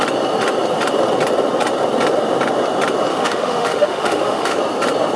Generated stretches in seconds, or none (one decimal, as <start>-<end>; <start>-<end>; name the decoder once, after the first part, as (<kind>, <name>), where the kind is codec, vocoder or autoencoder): 3.1-4.6 (autoencoder, DAC-VAE)